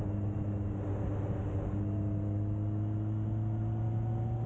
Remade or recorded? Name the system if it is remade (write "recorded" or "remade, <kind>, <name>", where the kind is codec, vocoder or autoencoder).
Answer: recorded